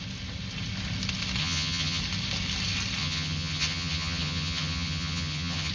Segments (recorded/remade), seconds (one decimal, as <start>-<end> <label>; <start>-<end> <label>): 0.0-1.4 recorded; 1.4-2.0 remade; 2.0-3.0 recorded; 3.0-5.7 remade